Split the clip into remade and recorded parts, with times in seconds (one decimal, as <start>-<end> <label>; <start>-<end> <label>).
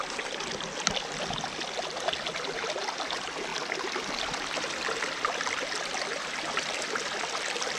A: 0.0-7.8 recorded